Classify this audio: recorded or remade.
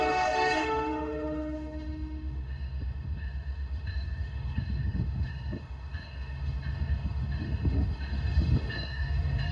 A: remade